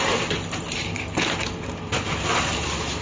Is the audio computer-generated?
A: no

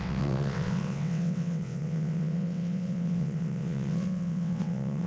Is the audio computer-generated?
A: yes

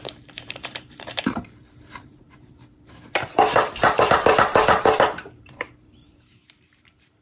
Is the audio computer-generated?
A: yes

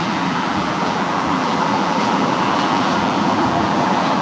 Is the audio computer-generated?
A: yes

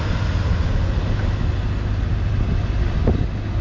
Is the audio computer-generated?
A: no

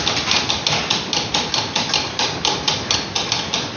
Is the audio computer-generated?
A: no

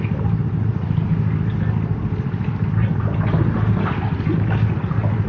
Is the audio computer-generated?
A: no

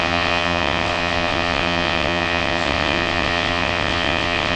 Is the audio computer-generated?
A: yes